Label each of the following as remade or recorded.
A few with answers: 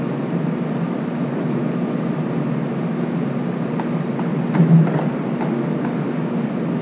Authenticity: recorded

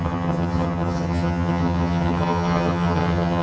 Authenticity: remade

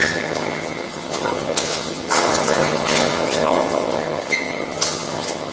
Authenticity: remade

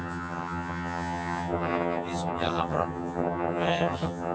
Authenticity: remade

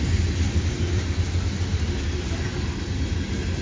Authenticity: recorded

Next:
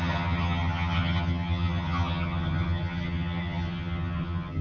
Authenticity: remade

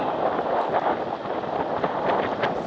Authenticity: recorded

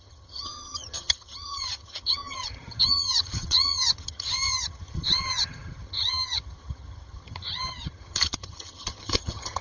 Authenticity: remade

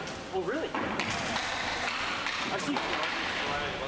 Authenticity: recorded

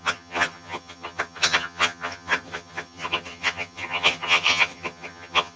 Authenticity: remade